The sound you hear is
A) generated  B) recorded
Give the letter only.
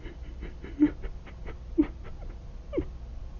B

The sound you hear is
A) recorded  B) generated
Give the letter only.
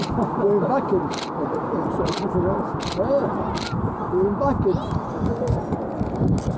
A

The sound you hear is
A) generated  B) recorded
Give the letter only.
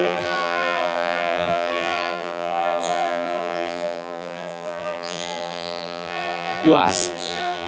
A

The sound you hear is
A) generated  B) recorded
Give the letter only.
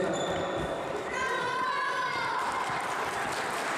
A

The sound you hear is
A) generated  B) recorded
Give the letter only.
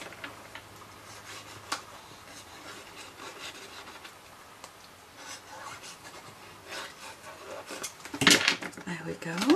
B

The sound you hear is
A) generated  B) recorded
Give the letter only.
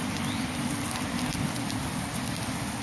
B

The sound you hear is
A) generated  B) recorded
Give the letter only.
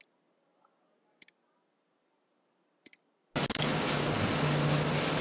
B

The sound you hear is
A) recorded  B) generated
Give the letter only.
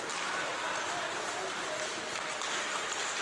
A